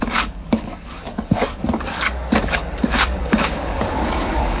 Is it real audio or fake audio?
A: fake